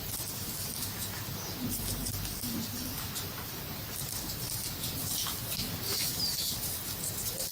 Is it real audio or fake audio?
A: real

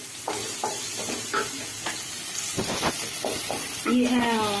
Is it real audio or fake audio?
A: real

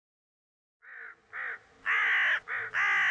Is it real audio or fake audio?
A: real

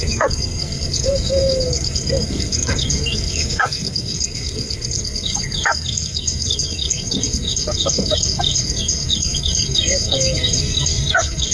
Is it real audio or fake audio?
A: fake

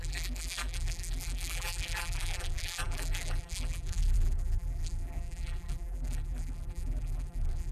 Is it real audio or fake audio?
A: fake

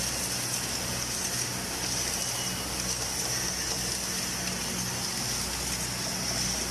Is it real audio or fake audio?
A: real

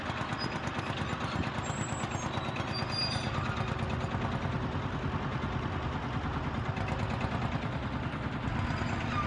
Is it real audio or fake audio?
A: real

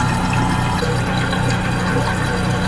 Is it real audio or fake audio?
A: real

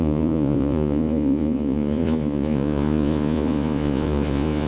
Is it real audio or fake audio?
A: fake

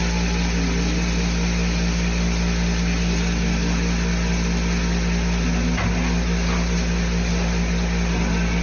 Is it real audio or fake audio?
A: real